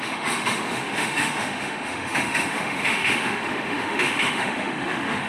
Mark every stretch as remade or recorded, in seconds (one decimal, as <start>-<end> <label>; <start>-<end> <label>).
0.0-5.3 remade